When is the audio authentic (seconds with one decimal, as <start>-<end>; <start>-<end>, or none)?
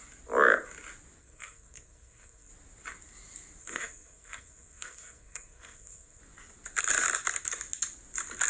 0.0-1.2; 2.5-3.6; 6.2-8.5